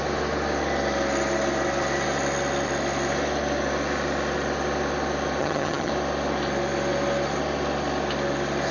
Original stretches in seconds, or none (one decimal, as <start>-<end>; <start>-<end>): 0.0-5.4; 5.9-8.7